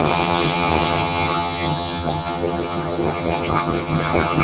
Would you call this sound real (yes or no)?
no